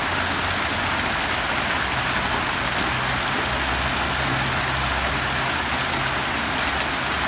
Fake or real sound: real